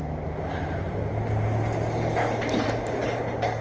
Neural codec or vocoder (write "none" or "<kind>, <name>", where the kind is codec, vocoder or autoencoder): none